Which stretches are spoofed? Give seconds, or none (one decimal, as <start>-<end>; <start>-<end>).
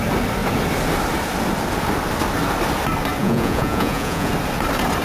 3.2-4.3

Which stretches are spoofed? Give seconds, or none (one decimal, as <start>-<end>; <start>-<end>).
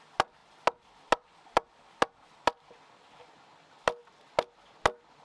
none